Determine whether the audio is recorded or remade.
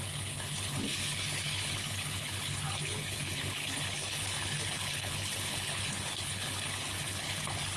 remade